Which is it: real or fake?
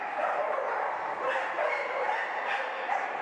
real